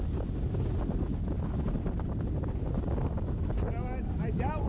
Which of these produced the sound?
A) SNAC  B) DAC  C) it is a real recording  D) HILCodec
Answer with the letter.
C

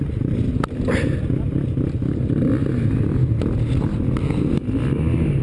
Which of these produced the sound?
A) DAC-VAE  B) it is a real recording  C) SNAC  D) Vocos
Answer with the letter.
B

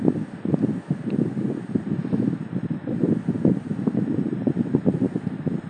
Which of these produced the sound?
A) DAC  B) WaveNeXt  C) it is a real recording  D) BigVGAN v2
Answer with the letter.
C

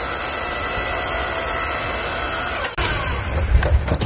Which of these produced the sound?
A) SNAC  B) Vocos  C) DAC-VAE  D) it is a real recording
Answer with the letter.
D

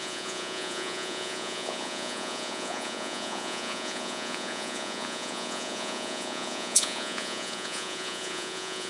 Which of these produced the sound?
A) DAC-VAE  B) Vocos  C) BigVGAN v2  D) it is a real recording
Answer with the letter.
B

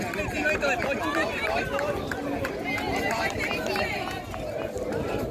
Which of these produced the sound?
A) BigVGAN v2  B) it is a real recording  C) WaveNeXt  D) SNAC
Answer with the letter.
B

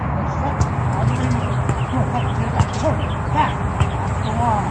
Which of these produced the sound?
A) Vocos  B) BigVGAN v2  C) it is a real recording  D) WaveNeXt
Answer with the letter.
C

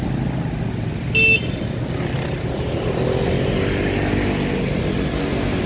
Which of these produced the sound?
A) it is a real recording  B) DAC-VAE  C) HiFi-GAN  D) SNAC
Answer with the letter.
A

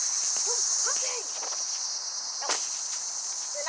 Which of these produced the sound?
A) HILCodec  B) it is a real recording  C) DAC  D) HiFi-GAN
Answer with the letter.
B